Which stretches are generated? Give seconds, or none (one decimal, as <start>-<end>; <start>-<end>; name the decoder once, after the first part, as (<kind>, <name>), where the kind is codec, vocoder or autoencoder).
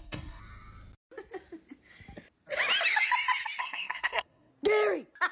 0.0-0.4 (codec, SNAC); 3.6-4.5